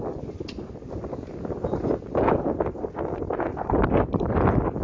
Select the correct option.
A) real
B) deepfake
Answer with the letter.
A